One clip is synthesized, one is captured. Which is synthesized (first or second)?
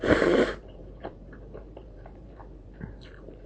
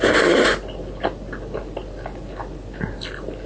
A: first